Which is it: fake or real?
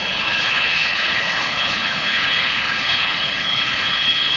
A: fake